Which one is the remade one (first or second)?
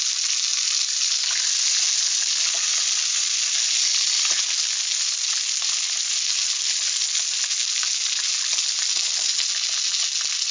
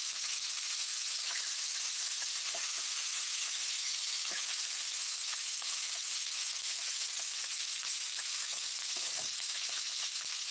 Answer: second